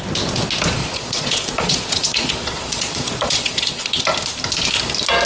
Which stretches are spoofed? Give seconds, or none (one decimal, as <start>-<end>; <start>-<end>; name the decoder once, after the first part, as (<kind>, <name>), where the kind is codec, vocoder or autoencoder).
0.8-4.0 (vocoder, Vocos)